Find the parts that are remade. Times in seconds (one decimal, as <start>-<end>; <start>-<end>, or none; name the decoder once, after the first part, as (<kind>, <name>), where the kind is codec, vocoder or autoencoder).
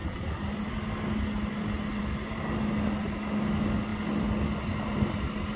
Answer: none